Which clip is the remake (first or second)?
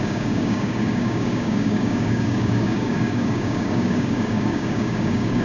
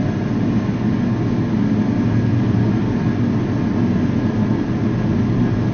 first